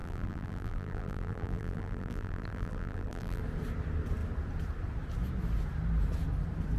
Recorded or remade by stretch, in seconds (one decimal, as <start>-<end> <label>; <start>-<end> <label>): 0.0-3.4 remade; 3.4-6.8 recorded